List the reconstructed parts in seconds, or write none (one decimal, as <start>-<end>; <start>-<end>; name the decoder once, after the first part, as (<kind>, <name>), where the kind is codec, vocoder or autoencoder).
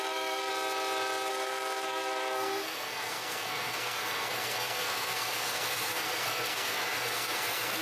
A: 0.0-0.5 (codec, SNAC); 1.3-7.8